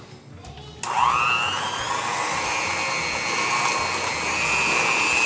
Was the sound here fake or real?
real